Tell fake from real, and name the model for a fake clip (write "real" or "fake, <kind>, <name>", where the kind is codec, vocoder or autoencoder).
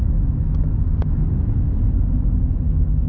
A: real